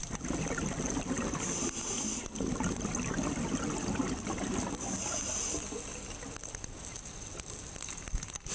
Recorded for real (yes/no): yes